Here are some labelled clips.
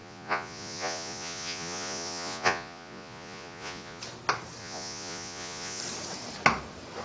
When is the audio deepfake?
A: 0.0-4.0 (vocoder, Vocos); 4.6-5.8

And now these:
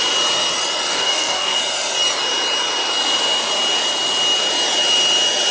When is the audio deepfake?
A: 0.9-1.6 (codec, DAC)